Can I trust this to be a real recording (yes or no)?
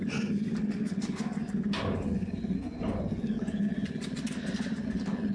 yes